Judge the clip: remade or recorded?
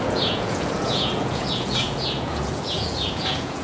remade